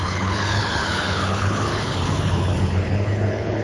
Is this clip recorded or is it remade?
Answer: remade